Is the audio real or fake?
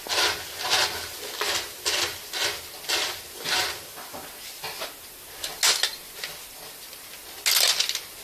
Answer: real